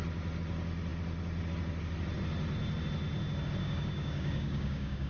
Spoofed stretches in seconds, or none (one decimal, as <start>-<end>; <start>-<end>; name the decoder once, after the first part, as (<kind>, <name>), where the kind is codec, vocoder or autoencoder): 3.6-5.1 (codec, DAC)